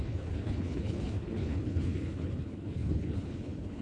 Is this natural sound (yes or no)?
no